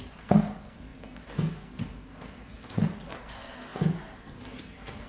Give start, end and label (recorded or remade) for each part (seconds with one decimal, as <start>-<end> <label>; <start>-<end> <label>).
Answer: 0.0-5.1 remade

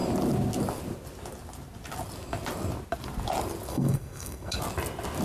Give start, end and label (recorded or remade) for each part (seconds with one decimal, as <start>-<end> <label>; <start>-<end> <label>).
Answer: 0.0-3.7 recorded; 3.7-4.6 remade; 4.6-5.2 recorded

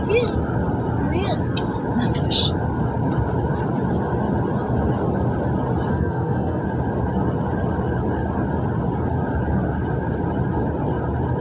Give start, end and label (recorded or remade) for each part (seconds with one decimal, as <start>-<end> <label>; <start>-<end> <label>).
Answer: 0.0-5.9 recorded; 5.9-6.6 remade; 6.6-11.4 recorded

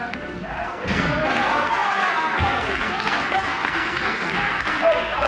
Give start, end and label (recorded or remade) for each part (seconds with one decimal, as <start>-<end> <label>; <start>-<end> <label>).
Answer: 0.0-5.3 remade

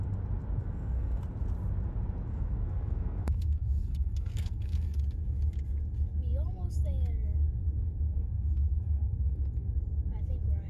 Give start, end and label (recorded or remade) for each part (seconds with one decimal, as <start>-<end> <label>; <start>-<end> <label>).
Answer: 0.0-0.6 recorded; 0.6-1.2 remade; 1.2-2.3 recorded; 2.3-5.0 remade; 5.0-8.1 recorded; 8.1-9.7 remade; 9.7-10.7 recorded

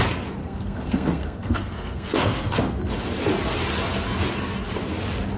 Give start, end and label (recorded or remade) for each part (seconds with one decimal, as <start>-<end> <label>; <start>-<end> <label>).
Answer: 0.0-0.4 recorded; 0.4-2.6 remade; 2.6-5.4 recorded